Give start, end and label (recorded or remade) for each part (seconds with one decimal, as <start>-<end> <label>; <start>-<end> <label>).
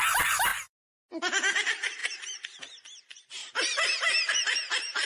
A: 0.0-0.5 recorded; 0.5-1.1 remade; 1.1-2.0 recorded; 2.0-2.6 remade; 2.6-3.4 recorded; 3.4-4.4 remade; 4.4-5.1 recorded